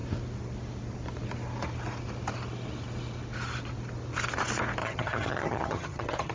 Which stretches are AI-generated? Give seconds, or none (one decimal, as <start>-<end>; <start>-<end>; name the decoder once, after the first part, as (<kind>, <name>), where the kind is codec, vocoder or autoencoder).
4.8-6.3 (vocoder, HiFi-GAN)

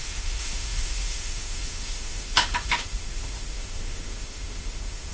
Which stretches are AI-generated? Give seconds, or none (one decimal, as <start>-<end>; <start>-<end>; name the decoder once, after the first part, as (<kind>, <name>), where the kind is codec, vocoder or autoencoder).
0.0-5.1 (autoencoder, DAC-VAE)

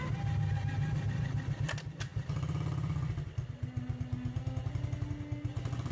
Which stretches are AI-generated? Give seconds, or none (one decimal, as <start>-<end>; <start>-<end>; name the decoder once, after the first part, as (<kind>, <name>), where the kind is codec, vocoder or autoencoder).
none

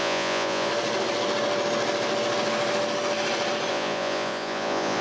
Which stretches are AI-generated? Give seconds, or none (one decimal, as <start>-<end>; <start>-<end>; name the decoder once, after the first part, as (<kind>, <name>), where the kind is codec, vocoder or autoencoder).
0.0-0.7 (vocoder, Vocos); 3.7-5.0

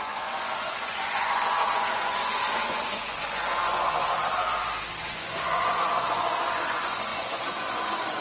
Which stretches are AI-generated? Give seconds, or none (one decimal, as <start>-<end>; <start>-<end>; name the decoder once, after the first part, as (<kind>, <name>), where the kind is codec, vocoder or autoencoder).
0.0-4.0 (vocoder, Vocos); 5.0-8.2